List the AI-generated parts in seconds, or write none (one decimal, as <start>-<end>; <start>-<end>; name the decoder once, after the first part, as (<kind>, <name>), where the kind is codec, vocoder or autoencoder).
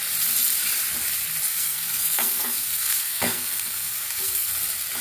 1.5-4.5 (codec, SNAC)